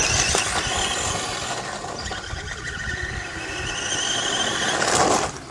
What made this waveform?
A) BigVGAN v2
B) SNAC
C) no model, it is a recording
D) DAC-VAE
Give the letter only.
C